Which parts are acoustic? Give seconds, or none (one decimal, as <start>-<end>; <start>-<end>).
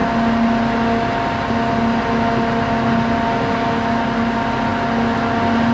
0.0-5.7